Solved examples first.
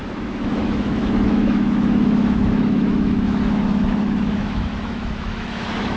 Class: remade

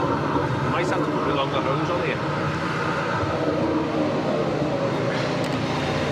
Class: recorded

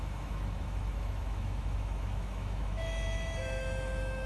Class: remade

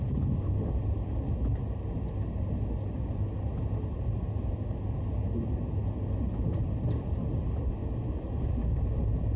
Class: recorded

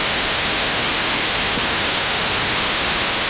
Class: remade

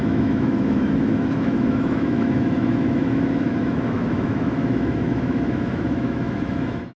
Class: remade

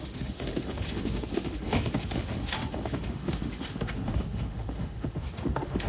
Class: remade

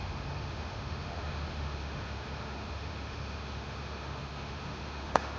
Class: remade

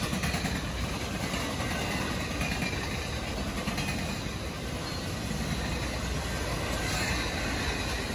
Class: recorded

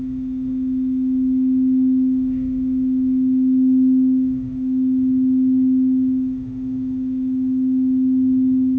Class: remade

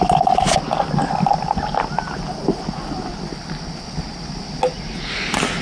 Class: recorded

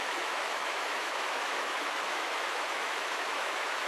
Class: remade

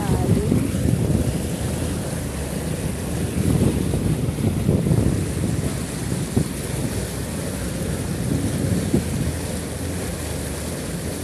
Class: recorded